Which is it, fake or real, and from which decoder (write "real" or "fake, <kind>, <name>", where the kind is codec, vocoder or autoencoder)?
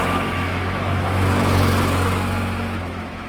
fake, autoencoder, DAC-VAE